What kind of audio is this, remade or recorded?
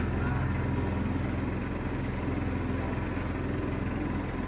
recorded